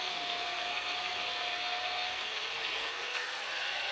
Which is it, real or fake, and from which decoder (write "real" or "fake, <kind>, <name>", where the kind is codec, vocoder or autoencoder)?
fake, codec, SNAC